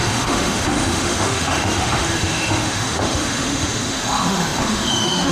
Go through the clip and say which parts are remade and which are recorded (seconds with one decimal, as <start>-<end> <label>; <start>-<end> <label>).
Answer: 0.0-5.3 remade